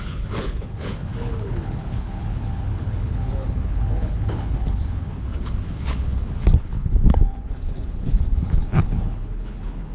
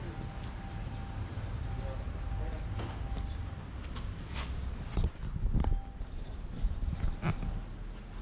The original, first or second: second